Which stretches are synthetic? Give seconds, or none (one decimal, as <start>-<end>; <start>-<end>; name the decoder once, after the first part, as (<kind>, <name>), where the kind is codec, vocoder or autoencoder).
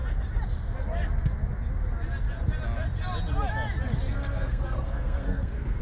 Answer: 4.1-5.8 (codec, SNAC)